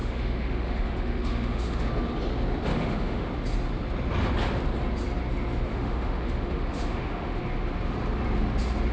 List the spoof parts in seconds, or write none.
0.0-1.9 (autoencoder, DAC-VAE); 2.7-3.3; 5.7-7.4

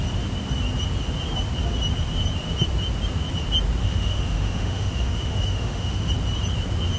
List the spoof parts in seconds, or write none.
3.8-6.1 (autoencoder, DAC-VAE)

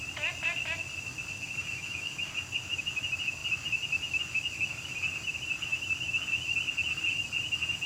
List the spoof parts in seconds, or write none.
1.6-2.3 (autoencoder, DAC-VAE)

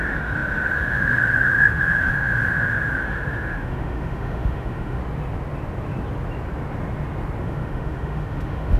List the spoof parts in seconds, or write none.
0.0-5.0 (autoencoder, DAC-VAE); 7.4-8.8

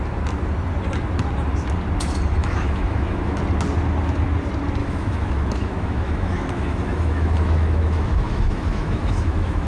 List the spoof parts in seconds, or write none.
2.4-3.4 (autoencoder, DAC-VAE); 4.8-9.7

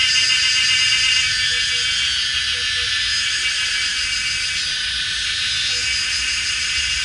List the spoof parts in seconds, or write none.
none

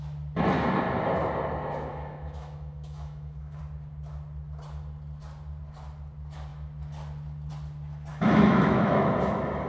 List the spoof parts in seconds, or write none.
1.9-3.6 (autoencoder, DAC-VAE); 8.1-9.1

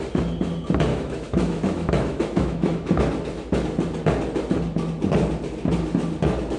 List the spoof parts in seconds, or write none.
0.9-3.0 (autoencoder, DAC-VAE)